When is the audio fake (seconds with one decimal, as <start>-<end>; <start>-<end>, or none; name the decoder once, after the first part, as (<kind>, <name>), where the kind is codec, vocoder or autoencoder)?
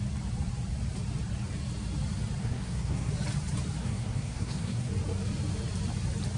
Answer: 2.4-3.1 (codec, SNAC); 3.8-4.9